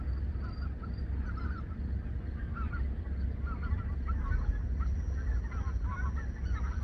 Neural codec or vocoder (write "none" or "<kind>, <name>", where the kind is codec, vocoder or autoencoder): none